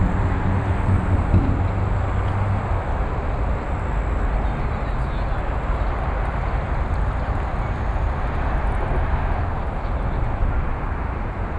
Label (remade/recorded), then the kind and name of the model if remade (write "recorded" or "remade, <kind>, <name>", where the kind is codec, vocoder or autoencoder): recorded